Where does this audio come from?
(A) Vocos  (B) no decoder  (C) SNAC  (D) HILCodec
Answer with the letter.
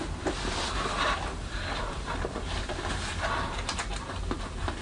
B